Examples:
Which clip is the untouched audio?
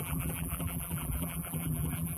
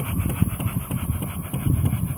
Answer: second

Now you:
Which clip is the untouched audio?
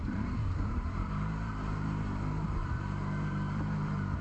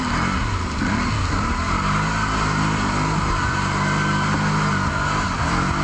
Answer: second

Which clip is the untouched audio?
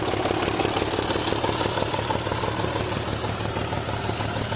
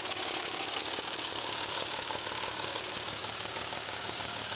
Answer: first